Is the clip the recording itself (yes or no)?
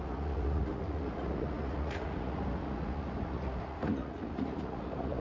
no